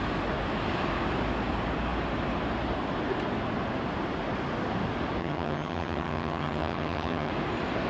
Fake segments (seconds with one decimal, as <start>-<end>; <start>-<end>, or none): 5.2-7.3